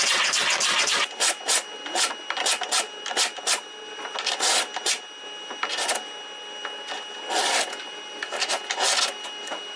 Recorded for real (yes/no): yes